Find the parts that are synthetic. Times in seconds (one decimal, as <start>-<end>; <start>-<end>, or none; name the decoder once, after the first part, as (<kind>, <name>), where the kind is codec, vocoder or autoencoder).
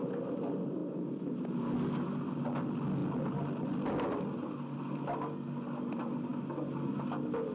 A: 0.8-1.4 (vocoder, BigVGAN v2)